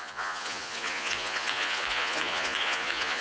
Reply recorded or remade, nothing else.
remade